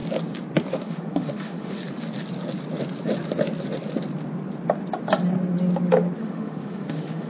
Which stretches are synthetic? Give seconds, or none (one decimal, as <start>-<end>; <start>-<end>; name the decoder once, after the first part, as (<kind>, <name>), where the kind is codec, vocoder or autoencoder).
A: 0.8-1.8 (autoencoder, DAC-VAE); 6.2-7.3